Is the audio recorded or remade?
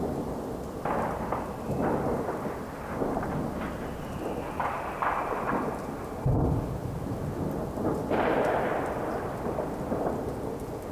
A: recorded